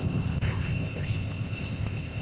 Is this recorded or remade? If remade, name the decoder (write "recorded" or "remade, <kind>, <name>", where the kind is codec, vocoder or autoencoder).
remade, codec, ZipCodec